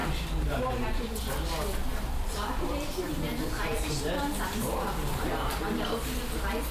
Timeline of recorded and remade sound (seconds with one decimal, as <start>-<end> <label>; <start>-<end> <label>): 0.0-1.2 remade; 1.2-1.9 recorded; 1.9-5.9 remade; 5.9-6.7 recorded